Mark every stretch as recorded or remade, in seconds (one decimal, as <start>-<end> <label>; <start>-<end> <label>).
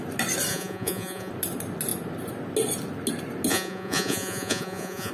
0.0-0.5 recorded; 0.5-1.3 remade; 1.3-3.5 recorded; 3.5-5.1 remade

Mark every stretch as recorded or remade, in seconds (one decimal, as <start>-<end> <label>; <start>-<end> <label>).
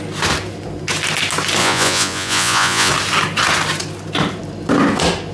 0.0-1.6 recorded; 1.6-2.9 remade; 2.9-5.3 recorded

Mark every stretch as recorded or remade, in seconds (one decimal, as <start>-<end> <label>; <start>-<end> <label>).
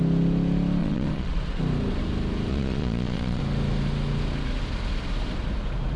0.0-0.8 recorded; 0.8-1.4 remade; 1.4-2.5 recorded; 2.5-3.4 remade; 3.4-6.0 recorded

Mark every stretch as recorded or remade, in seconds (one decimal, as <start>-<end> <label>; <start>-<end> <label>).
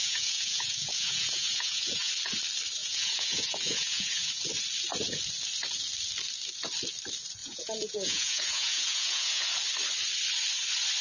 0.0-2.1 remade; 2.1-2.8 recorded; 2.8-4.4 remade; 4.4-7.4 recorded; 7.4-9.5 remade; 9.5-11.0 recorded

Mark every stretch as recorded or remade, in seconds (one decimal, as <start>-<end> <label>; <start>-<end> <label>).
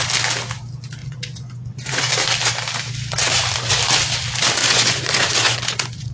0.0-1.0 recorded; 1.0-2.1 remade; 2.1-4.6 recorded; 4.6-6.1 remade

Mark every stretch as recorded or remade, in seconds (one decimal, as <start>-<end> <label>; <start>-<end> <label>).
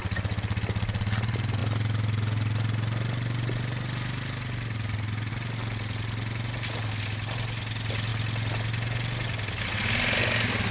0.0-10.7 recorded